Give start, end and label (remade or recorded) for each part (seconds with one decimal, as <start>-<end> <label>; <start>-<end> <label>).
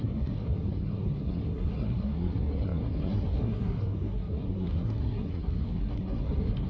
0.0-6.7 remade